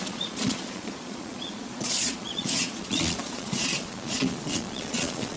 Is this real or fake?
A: fake